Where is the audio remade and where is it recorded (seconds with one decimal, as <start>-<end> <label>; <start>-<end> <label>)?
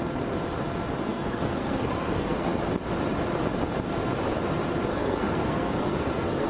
0.0-1.1 recorded; 1.1-2.6 remade; 2.6-4.9 recorded; 4.9-6.5 remade